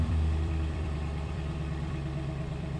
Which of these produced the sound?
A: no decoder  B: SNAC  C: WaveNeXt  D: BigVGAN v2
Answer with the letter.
D